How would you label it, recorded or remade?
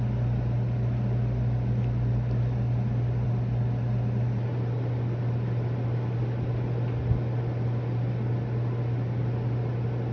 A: recorded